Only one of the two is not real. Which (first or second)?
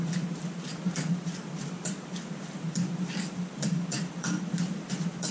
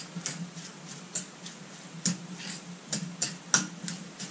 first